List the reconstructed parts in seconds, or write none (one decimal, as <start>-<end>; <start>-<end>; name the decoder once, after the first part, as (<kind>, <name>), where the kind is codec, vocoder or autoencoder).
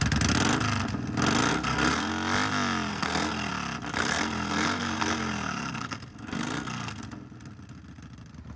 1.5-2.1 (codec, SNAC); 2.9-3.5; 4.0-7.0